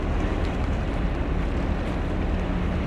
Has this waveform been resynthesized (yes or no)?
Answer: no